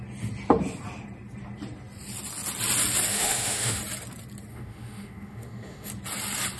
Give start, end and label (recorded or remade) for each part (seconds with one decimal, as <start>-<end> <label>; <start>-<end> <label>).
0.0-3.1 recorded; 3.1-3.8 remade; 3.8-4.5 recorded; 4.5-5.9 remade; 5.9-6.6 recorded